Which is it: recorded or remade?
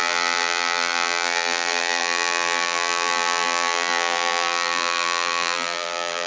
remade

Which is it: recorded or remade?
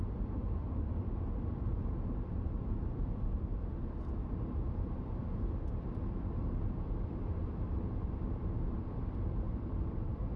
remade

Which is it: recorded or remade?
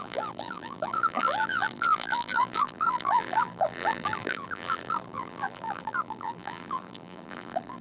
remade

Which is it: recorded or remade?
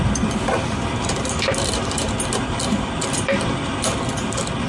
remade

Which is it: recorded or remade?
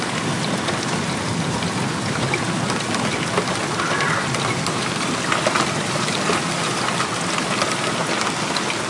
recorded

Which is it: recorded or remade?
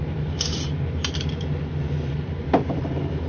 remade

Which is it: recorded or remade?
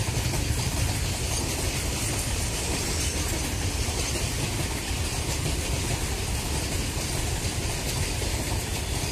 remade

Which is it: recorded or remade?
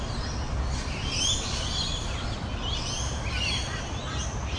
recorded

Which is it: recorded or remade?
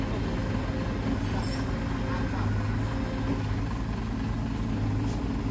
recorded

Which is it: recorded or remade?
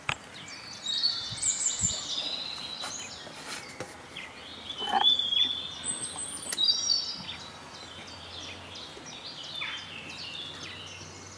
recorded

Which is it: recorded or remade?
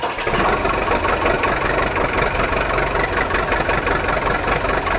recorded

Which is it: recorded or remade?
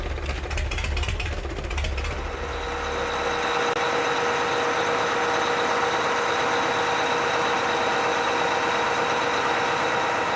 recorded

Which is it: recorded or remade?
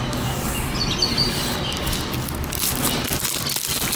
recorded